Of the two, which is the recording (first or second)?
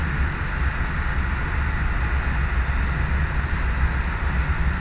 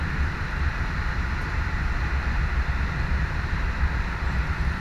first